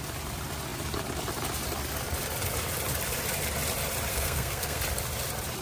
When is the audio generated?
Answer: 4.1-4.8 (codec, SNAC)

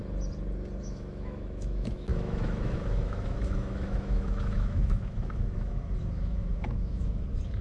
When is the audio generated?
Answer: 0.8-7.6 (autoencoder, DAC-VAE)

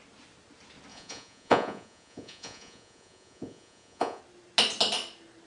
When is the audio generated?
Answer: 0.9-4.2 (vocoder, Vocos)

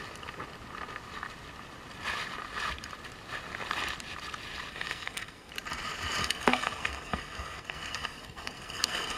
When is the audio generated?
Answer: 4.7-5.5 (codec, SNAC); 6.2-9.2